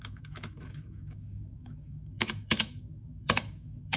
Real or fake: fake